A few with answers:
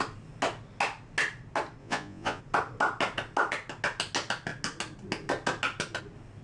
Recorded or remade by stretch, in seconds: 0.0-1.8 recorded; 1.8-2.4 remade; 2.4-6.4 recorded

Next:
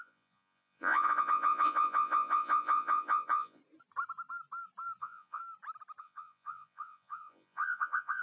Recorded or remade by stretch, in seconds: 0.0-3.6 remade; 3.6-5.0 recorded; 5.0-5.4 remade; 5.4-6.0 recorded; 6.0-8.2 remade

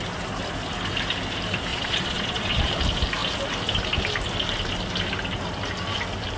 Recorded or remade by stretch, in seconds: 0.0-1.7 recorded; 1.7-2.7 remade; 2.7-6.4 recorded

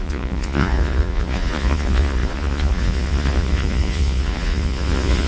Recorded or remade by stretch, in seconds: 0.0-5.3 remade

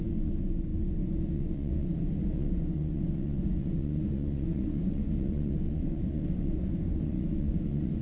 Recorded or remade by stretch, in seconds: 0.0-8.0 remade

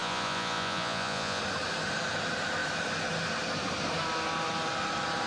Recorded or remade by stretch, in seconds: 0.0-1.4 remade; 1.4-5.3 recorded

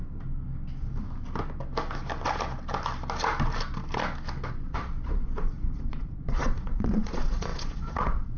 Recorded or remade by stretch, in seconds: 0.0-4.5 recorded; 4.5-8.4 remade